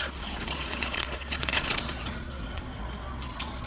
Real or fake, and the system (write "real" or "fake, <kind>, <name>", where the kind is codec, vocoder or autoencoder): fake, vocoder, Vocos